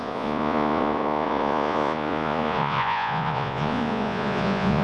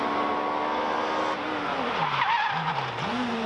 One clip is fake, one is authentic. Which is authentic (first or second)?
second